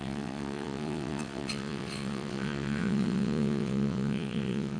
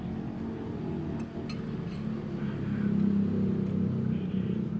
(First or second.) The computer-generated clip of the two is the first